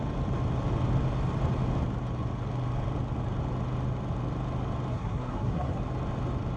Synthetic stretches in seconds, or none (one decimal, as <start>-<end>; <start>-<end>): 4.9-5.8